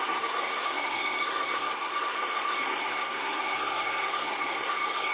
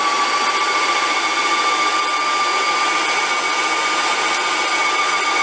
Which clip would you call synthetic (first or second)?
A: first